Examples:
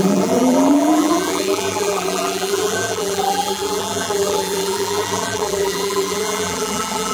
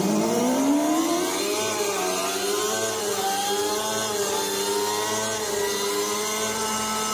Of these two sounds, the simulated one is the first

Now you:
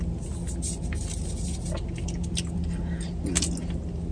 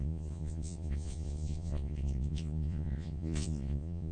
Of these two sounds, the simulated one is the second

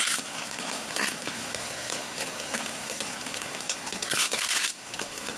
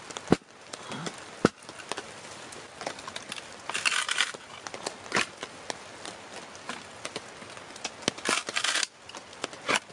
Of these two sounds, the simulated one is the first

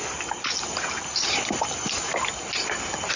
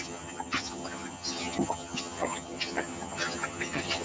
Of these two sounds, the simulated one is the second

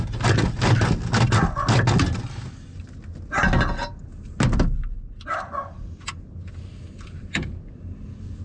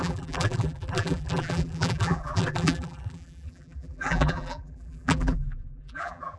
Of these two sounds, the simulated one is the second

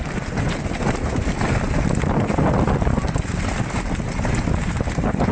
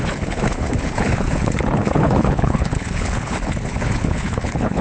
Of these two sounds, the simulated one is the second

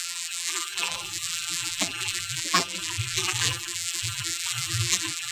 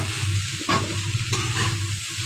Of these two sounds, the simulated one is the first